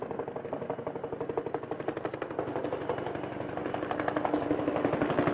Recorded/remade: recorded